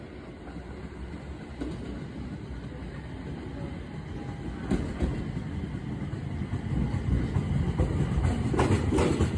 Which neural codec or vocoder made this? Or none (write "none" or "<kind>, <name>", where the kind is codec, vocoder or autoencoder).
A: none